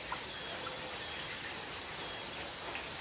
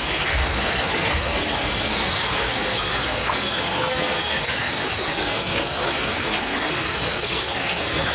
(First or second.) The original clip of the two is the first